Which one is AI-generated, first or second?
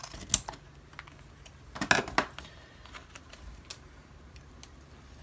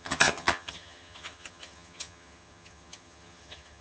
second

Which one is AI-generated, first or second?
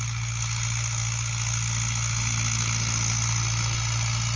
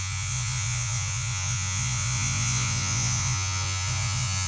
second